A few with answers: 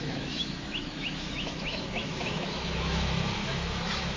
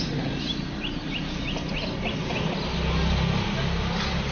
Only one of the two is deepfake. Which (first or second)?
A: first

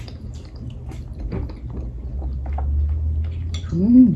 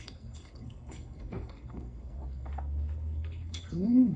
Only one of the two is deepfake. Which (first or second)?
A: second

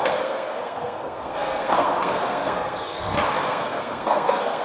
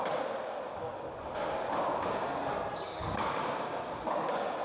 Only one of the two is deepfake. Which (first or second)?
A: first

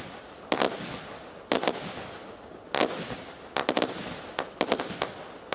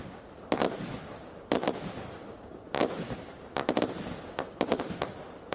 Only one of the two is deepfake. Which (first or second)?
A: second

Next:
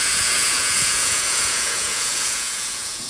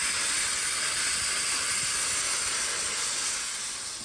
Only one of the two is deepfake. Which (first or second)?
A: first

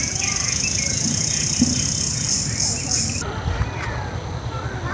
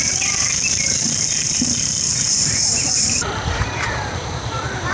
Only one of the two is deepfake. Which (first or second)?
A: second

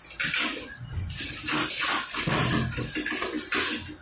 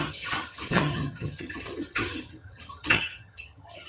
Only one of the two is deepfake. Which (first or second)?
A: second